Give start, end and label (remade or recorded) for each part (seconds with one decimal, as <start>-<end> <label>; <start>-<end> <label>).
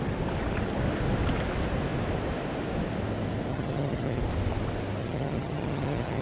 0.0-3.5 recorded; 3.5-4.2 remade; 4.2-5.0 recorded; 5.0-6.2 remade